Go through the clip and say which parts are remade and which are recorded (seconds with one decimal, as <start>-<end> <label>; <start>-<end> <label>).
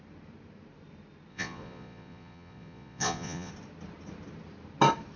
0.0-1.3 recorded; 1.3-3.5 remade; 3.5-5.2 recorded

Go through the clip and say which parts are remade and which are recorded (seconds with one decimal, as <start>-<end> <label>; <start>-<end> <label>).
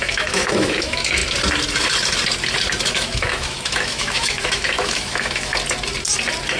0.0-1.2 remade; 1.2-2.9 recorded; 2.9-5.5 remade; 5.5-6.6 recorded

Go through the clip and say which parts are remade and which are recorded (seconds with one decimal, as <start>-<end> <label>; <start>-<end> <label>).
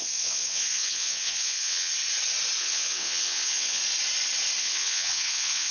0.0-1.9 remade; 1.9-2.6 recorded; 2.6-3.8 remade; 3.8-4.6 recorded; 4.6-5.7 remade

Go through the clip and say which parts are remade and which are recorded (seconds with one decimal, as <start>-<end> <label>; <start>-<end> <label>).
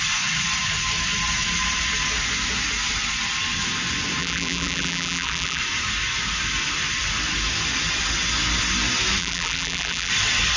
0.0-4.2 recorded; 4.2-5.6 remade; 5.6-9.2 recorded; 9.2-10.1 remade; 10.1-10.6 recorded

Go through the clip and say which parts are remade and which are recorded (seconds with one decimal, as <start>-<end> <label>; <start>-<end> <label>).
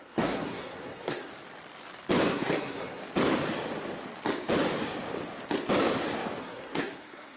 0.0-1.3 remade; 1.3-2.3 recorded; 2.3-3.0 remade; 3.0-6.4 recorded; 6.4-7.4 remade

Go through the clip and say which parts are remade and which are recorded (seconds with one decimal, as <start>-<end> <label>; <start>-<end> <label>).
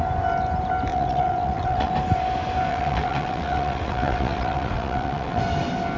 0.0-0.9 recorded; 0.9-1.9 remade; 1.9-2.7 recorded; 2.7-5.4 remade; 5.4-6.0 recorded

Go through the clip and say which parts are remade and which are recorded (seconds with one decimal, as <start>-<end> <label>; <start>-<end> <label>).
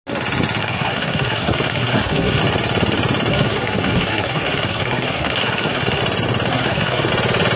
0.0-0.6 recorded; 0.6-2.4 remade; 2.4-3.3 recorded; 3.3-6.0 remade; 6.0-6.5 recorded; 6.5-7.1 remade; 7.1-7.6 recorded